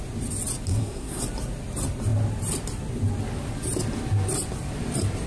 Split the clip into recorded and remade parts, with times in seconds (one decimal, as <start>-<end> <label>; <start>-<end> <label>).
0.0-0.7 recorded; 0.7-1.2 remade; 1.2-5.3 recorded